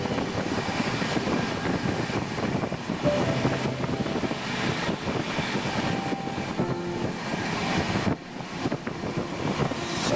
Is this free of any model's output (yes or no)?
yes